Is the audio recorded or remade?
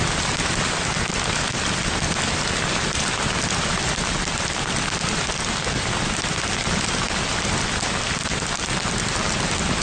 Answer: recorded